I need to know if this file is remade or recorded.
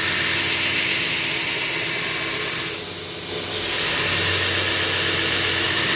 recorded